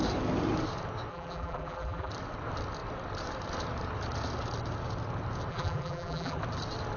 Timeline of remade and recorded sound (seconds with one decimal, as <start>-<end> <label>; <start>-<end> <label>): 0.0-1.1 recorded; 1.1-2.1 remade; 2.1-5.5 recorded; 5.5-6.4 remade; 6.4-7.0 recorded